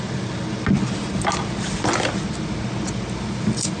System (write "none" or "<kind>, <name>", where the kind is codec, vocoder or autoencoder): none